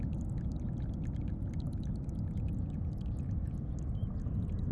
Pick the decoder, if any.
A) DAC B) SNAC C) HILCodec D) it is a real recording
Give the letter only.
D